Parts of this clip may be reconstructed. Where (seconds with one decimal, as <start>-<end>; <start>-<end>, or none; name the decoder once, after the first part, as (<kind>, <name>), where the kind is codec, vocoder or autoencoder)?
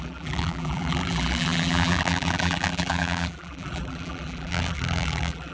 0.0-5.5 (vocoder, BigVGAN v2)